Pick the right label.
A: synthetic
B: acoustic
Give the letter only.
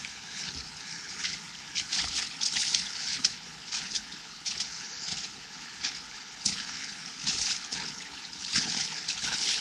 A